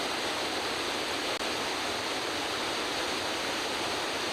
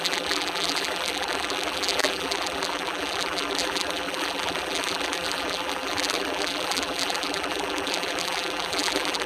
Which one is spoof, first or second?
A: second